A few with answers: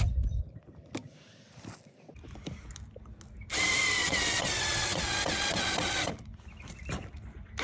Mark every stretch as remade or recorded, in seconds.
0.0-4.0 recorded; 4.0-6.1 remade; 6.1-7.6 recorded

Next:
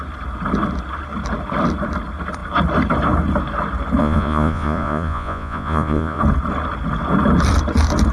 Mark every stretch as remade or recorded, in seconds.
0.0-4.0 recorded; 4.0-6.2 remade; 6.2-8.1 recorded

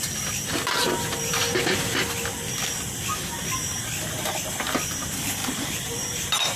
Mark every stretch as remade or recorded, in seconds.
0.0-0.5 recorded; 0.5-2.0 remade; 2.0-5.4 recorded; 5.4-6.6 remade

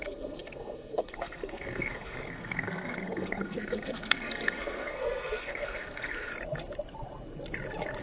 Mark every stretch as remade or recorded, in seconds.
0.0-6.3 remade; 6.3-8.0 recorded

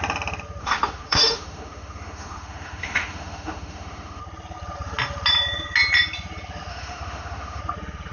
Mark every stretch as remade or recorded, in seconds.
0.0-0.6 recorded; 0.6-4.2 remade; 4.2-6.7 recorded; 6.7-7.6 remade; 7.6-8.1 recorded

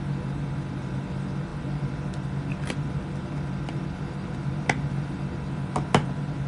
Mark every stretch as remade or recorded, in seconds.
0.0-6.5 recorded